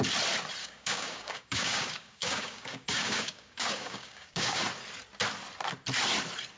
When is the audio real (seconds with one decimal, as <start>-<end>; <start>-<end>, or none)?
0.0-0.6; 4.6-6.6